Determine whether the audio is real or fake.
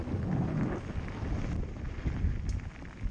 real